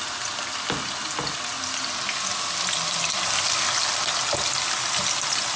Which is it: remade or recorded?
recorded